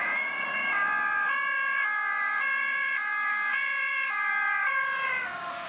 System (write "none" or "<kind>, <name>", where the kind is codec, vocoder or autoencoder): codec, DAC